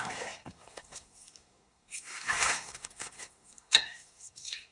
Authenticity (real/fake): fake